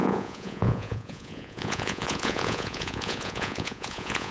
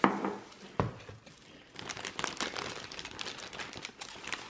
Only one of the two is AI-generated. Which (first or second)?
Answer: first